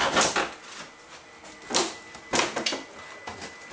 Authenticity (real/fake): real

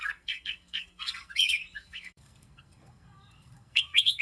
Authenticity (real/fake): fake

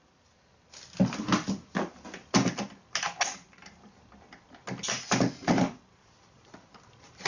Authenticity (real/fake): real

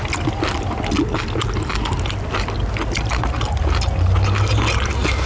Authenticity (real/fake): real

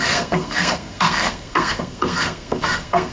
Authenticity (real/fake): fake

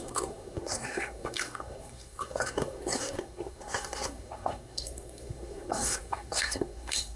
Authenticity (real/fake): fake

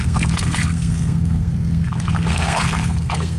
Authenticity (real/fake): fake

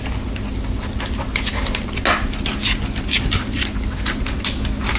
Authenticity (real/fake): real